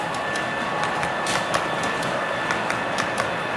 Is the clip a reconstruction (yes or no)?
no